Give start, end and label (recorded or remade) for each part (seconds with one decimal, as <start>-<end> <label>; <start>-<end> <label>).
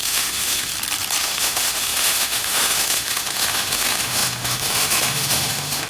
0.0-0.7 remade; 0.7-1.2 recorded; 1.2-5.9 remade